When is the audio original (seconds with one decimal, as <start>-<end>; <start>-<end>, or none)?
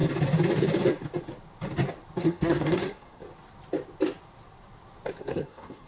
0.0-2.2; 3.2-5.2